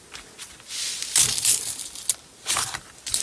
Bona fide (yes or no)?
no